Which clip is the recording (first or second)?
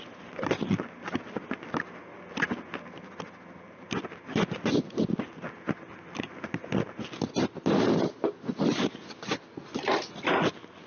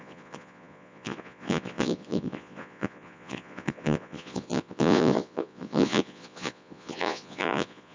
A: first